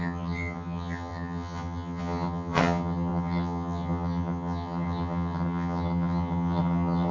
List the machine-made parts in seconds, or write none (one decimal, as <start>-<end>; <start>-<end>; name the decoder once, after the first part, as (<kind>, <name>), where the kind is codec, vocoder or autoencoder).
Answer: 0.0-7.1 (vocoder, HiFi-GAN)